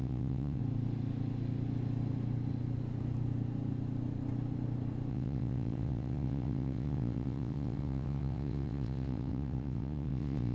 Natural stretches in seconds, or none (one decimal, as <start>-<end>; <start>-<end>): 0.6-5.1